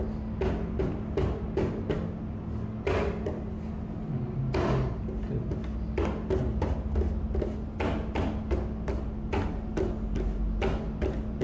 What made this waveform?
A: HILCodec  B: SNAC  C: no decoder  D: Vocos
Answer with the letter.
C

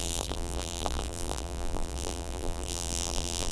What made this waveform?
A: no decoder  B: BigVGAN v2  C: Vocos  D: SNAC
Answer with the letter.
B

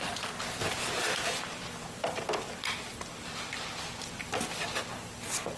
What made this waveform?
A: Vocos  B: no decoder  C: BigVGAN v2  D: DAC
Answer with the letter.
C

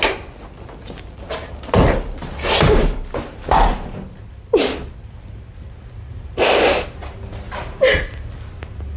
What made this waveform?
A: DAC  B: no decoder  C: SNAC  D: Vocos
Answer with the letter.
B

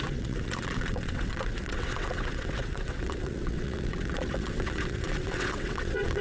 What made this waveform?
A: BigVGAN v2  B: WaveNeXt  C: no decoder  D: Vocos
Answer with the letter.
B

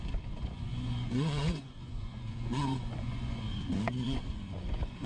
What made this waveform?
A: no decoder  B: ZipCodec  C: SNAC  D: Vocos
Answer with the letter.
D